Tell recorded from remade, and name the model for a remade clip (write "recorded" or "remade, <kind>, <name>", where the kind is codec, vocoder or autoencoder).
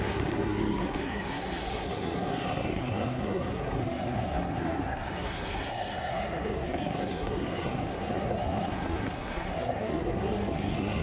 remade, codec, SNAC